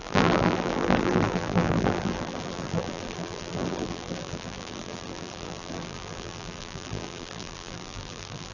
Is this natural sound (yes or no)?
no